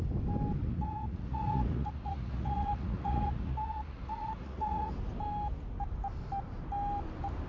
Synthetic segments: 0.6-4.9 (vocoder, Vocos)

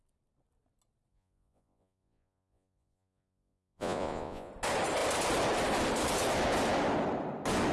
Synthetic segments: 1.1-4.5 (vocoder, Vocos)

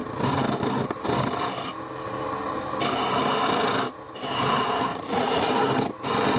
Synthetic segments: 4.9-5.5 (vocoder, Vocos)

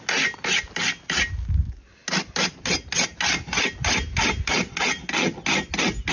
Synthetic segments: none

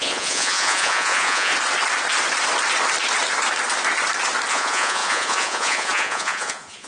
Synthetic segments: 0.0-1.5 (vocoder, Vocos); 4.5-6.9